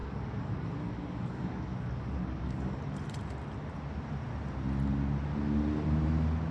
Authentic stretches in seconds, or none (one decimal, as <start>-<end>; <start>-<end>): 2.8-6.5